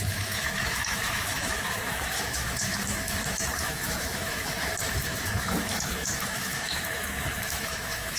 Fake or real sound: fake